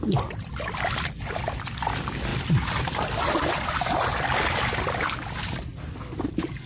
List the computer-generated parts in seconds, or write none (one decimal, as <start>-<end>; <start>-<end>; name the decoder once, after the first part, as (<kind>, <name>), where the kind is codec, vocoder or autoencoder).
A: none